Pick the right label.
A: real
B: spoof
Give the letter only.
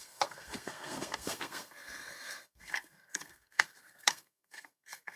B